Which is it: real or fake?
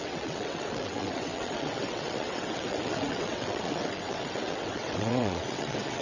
fake